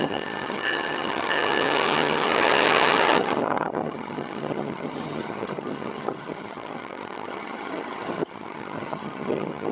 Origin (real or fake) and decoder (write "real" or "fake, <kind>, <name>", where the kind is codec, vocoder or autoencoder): fake, vocoder, HiFi-GAN